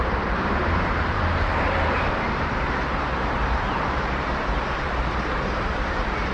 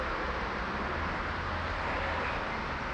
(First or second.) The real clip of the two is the second